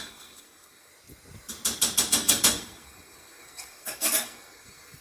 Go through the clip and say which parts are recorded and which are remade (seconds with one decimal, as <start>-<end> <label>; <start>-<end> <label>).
0.0-0.9 remade; 0.9-2.1 recorded; 2.1-5.0 remade